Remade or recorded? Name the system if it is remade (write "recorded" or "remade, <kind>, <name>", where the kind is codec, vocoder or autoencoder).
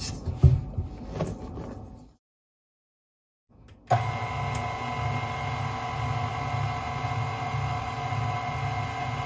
recorded